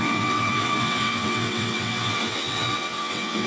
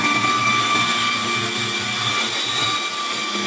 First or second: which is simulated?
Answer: first